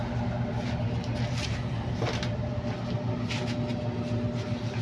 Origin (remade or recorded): recorded